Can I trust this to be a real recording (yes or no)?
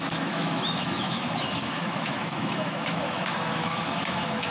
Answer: no